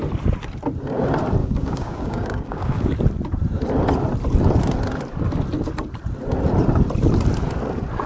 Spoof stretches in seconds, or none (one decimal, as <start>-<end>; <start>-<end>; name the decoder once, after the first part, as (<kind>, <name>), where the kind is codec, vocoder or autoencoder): 1.4-2.9 (codec, DAC)